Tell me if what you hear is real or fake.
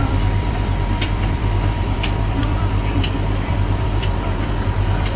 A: fake